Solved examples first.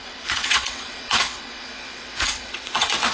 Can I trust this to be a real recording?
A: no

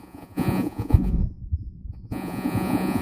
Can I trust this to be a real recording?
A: no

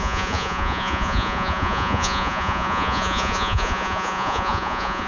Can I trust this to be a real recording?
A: no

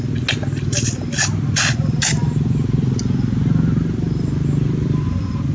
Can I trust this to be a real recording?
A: yes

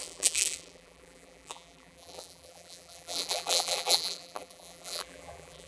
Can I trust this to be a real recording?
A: no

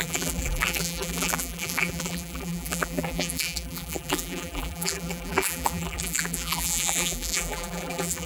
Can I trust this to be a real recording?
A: no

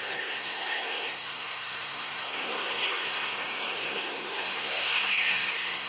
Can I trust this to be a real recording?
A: no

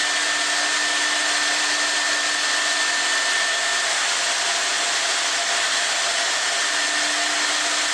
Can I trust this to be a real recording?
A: yes